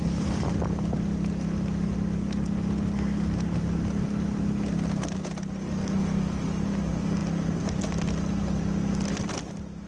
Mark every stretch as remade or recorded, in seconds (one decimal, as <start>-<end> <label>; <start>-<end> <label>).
0.0-9.9 recorded